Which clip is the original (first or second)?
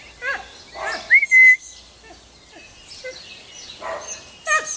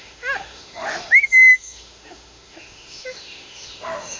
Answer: first